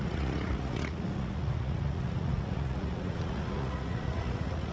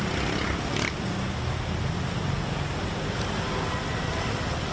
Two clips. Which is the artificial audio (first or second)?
first